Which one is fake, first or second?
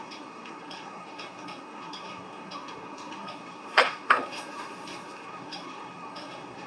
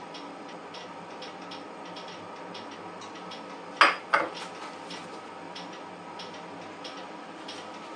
first